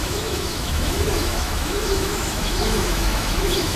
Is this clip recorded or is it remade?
remade